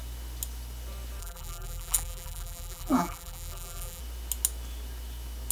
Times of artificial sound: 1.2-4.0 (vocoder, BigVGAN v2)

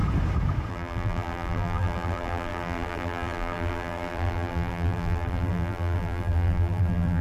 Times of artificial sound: 0.7-7.2 (vocoder, BigVGAN v2)

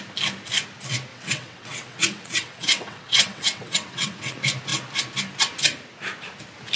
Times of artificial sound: 1.1-4.3 (vocoder, WaveNeXt)

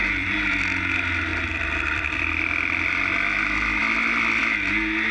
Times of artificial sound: 0.0-0.6 (vocoder, BigVGAN v2); 1.3-3.0